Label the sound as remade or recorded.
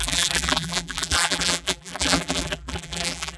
remade